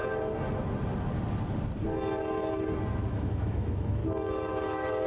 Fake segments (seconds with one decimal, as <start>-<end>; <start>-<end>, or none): 3.1-4.0; 4.5-5.1